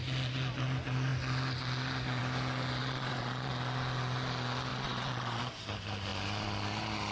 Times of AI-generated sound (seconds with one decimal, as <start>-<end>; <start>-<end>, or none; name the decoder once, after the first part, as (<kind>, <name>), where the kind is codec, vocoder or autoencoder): 2.8-3.5 (vocoder, Vocos); 4.7-5.4